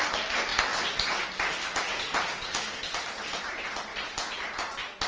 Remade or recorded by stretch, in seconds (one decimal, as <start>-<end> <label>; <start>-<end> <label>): 0.0-2.3 recorded; 2.3-2.8 remade; 2.8-5.1 recorded

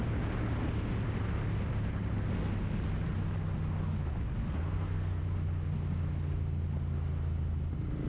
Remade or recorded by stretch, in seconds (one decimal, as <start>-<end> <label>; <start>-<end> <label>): 0.0-4.4 recorded; 4.4-5.2 remade; 5.2-8.1 recorded